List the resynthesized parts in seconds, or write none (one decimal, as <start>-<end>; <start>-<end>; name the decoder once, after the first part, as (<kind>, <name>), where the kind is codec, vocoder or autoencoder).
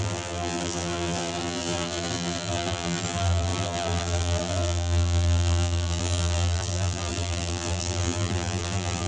0.0-9.1 (vocoder, BigVGAN v2)